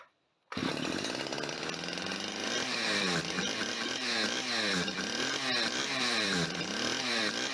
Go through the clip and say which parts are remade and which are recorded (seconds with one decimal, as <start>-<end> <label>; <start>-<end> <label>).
0.0-0.6 remade; 0.6-1.5 recorded; 1.5-7.5 remade